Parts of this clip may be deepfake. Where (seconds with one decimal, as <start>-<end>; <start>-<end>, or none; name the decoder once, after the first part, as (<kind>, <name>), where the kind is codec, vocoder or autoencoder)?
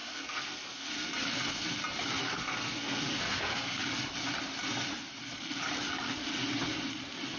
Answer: 0.0-1.1 (codec, SNAC); 2.2-3.8